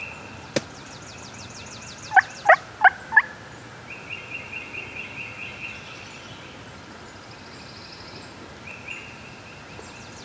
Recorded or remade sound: recorded